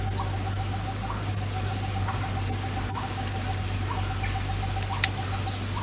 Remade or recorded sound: recorded